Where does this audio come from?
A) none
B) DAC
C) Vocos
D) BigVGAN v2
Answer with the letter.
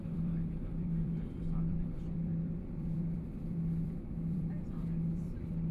D